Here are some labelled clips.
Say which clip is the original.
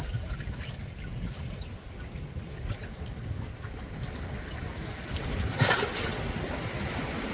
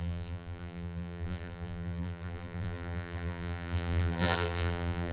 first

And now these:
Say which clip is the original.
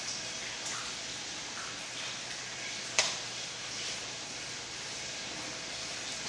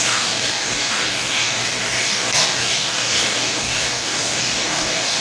first